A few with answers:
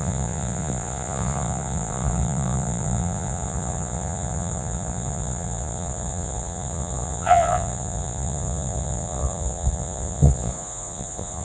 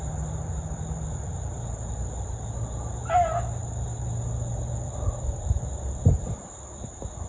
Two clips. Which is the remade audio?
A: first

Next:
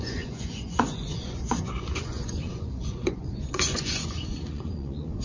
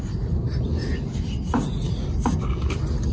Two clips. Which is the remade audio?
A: first